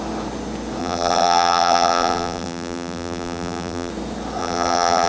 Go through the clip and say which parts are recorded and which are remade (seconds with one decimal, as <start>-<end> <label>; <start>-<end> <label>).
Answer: 0.0-0.8 recorded; 0.8-3.9 remade; 3.9-4.4 recorded; 4.4-5.1 remade